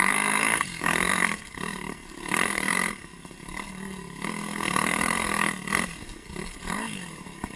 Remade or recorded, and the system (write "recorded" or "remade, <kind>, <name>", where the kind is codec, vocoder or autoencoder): remade, codec, SNAC